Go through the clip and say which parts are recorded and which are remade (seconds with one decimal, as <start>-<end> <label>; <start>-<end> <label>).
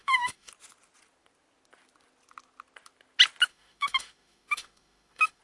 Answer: 0.0-0.5 remade; 0.5-3.5 recorded; 3.5-5.4 remade